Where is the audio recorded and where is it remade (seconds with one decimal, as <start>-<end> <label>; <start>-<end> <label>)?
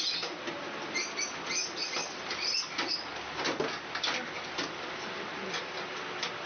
0.0-6.5 recorded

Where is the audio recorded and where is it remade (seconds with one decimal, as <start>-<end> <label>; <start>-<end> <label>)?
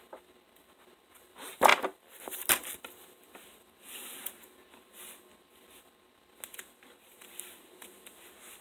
0.0-1.7 recorded; 1.7-2.2 remade; 2.2-8.6 recorded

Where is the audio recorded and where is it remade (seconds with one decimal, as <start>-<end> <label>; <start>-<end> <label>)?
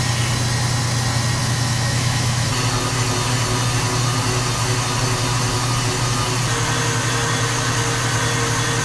0.0-1.4 recorded; 1.4-2.5 remade; 2.5-8.8 recorded